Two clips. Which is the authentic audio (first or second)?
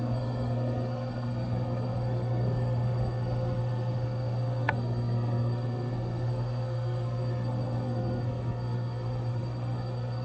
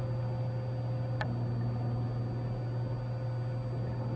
second